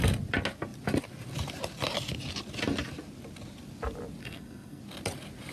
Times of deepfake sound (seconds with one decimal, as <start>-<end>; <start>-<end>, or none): 4.2-4.8